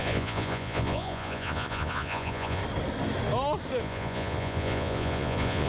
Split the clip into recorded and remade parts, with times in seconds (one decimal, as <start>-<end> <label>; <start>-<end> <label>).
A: 0.0-2.6 remade; 2.6-3.8 recorded; 3.8-5.7 remade